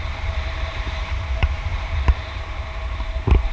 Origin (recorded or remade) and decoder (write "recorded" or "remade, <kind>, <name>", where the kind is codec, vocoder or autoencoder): remade, vocoder, BigVGAN v2